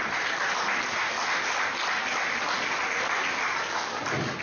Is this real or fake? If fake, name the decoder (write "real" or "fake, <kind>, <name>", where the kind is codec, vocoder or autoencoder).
real